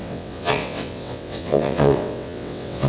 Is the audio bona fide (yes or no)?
no